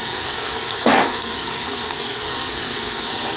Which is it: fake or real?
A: fake